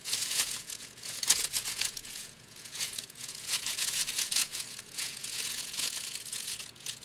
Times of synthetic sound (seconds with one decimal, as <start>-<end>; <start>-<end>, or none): 0.0-7.0